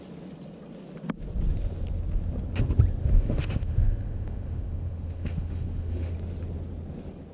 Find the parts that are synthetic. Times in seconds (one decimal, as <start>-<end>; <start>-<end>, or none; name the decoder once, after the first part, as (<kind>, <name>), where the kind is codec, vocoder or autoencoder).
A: 3.0-6.1 (autoencoder, DAC-VAE)